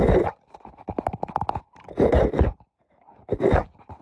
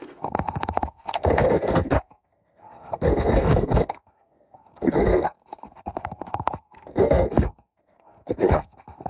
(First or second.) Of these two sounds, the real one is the first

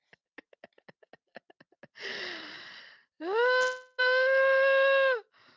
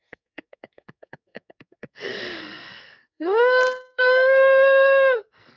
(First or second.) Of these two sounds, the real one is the first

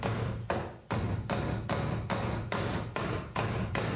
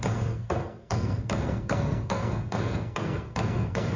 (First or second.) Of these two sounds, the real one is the first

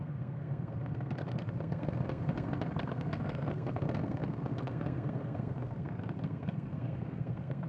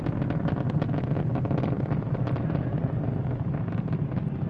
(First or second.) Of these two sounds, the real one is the second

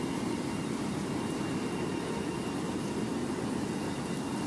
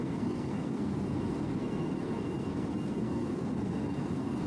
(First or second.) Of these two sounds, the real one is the first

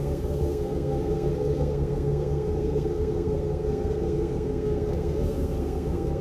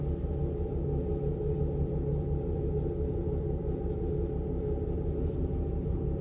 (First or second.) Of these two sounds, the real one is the second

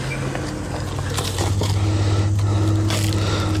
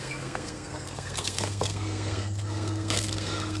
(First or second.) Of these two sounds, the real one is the first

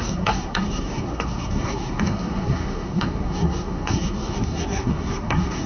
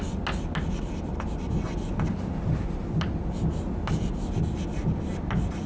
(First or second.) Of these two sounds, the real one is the second